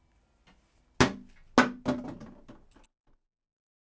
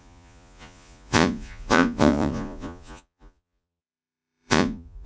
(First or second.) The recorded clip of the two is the first